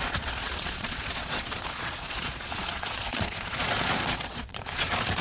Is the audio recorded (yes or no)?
no